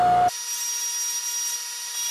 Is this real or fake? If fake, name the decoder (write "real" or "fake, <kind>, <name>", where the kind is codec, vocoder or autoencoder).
real